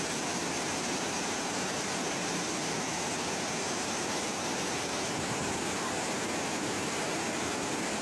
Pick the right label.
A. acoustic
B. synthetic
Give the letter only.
B